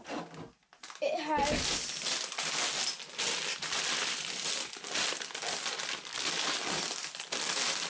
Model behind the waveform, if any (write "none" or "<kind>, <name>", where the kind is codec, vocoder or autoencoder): none